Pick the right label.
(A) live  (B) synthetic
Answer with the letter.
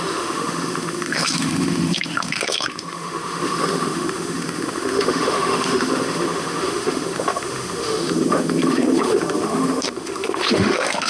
B